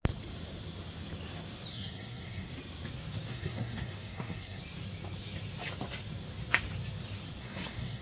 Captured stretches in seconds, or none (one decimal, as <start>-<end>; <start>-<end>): 0.0-1.7; 2.5-3.3; 4.6-7.4